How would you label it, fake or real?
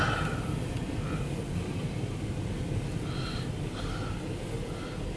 real